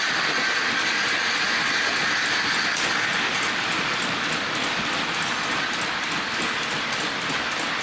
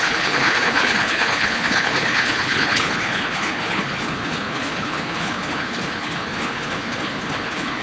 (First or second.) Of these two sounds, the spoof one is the second